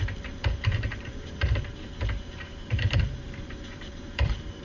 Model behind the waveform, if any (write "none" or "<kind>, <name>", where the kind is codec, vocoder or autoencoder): vocoder, BigVGAN v2